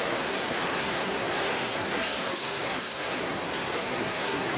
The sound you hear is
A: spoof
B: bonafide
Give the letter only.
A